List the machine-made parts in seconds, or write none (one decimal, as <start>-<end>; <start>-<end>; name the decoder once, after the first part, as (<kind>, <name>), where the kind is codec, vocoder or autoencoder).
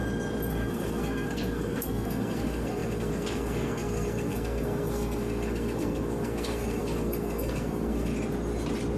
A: 0.5-8.1 (codec, SNAC)